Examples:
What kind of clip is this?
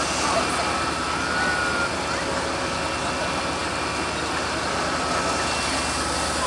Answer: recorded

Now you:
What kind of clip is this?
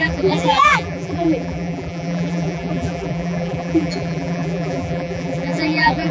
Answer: remade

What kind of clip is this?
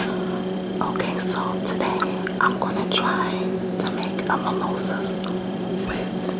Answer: remade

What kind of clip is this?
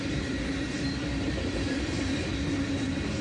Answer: remade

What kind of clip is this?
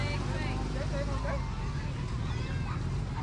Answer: recorded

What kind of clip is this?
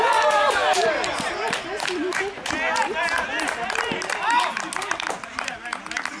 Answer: recorded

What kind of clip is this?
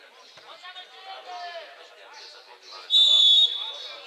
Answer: recorded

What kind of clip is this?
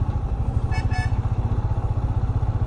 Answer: recorded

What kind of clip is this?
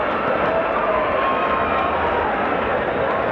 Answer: recorded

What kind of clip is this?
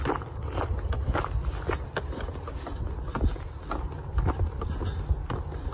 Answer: recorded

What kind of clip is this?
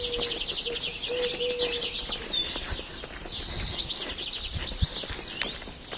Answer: recorded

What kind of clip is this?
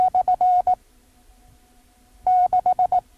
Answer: remade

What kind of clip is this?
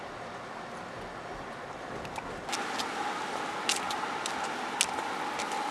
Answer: recorded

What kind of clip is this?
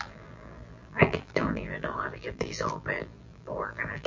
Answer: remade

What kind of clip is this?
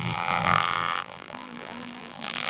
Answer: remade